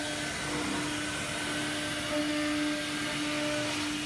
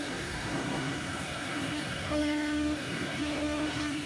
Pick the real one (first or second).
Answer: first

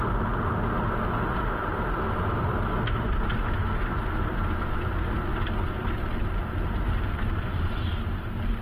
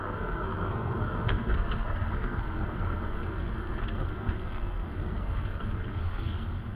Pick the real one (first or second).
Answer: first